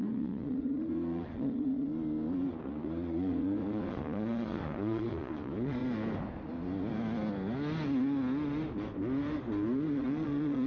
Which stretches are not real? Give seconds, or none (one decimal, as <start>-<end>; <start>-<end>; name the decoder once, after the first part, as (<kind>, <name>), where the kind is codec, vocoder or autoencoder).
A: 0.0-1.9 (vocoder, Vocos); 2.5-5.8; 10.0-10.7